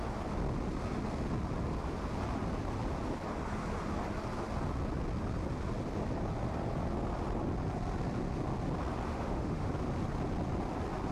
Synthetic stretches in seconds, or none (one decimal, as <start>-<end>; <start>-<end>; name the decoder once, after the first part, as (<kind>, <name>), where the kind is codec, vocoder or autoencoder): 9.1-9.7 (autoencoder, DAC-VAE)